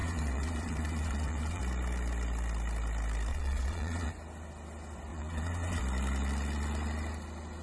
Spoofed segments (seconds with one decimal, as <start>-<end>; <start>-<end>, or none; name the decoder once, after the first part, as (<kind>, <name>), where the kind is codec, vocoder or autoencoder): 0.0-1.6 (vocoder, Vocos); 3.3-4.1; 5.1-5.8